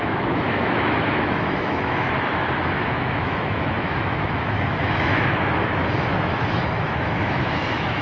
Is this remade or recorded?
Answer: remade